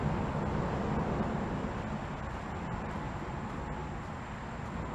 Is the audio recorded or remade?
recorded